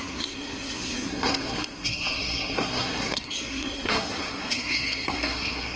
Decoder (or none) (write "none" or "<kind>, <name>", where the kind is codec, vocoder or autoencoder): codec, SNAC